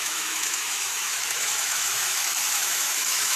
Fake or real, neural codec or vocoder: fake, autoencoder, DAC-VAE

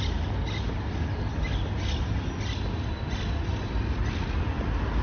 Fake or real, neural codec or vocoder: real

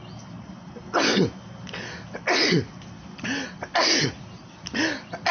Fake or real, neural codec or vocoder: real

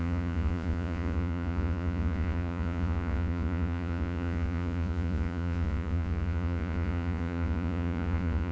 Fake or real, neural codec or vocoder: fake, vocoder, Vocos